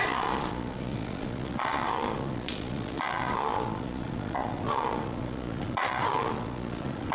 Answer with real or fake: fake